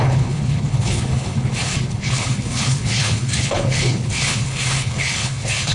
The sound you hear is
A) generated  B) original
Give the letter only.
A